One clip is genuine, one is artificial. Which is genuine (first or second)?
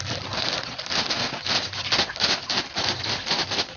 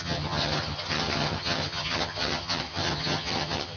first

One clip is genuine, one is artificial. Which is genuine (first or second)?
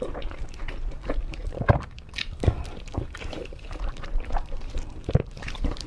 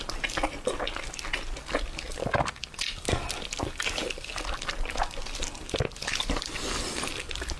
second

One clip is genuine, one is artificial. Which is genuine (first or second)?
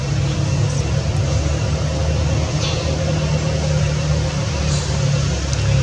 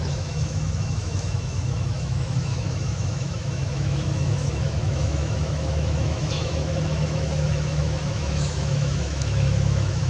first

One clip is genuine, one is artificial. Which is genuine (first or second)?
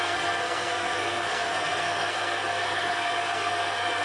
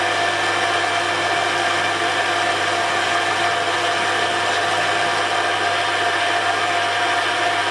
second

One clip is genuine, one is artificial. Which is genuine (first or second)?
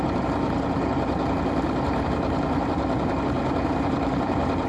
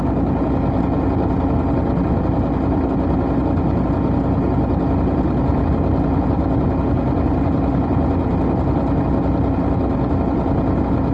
second